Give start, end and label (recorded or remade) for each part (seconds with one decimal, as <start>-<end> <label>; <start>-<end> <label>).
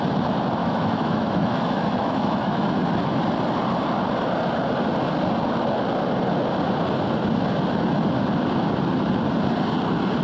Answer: 0.0-0.6 recorded; 0.6-2.7 remade; 2.7-10.2 recorded